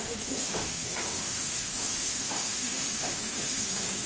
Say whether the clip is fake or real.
fake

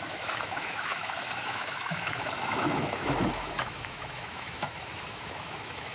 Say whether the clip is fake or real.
fake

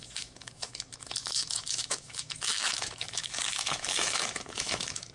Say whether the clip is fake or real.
fake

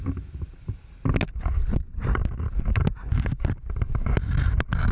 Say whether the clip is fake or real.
real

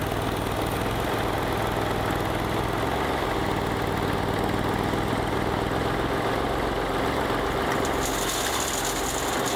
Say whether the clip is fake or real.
real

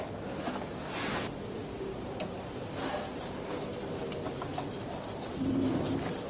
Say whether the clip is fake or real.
real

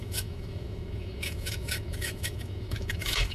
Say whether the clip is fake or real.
fake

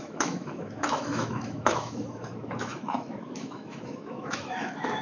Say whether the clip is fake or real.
fake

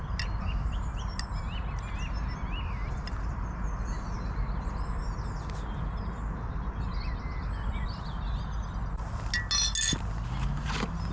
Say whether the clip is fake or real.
real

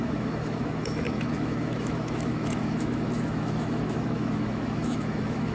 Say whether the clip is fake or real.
fake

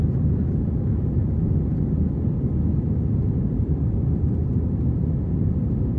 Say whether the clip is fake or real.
real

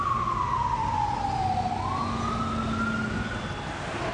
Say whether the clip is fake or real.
real